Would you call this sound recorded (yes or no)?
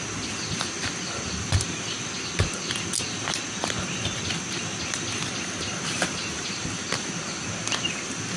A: yes